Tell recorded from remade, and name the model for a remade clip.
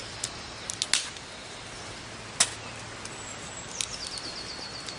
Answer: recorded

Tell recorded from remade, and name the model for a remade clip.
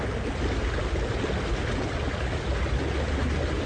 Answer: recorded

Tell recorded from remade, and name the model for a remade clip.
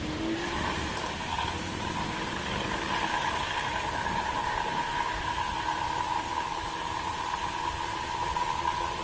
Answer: remade, vocoder, BigVGAN v2